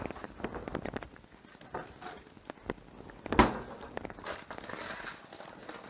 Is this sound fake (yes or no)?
no